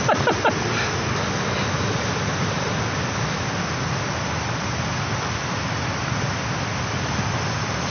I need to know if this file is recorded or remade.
recorded